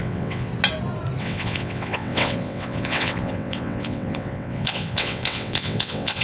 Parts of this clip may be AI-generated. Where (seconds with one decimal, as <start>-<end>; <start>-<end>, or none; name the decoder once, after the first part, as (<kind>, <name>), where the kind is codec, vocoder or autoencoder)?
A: 0.0-0.5 (vocoder, WaveNeXt); 1.2-6.2